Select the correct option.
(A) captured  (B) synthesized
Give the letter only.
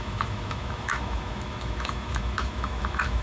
B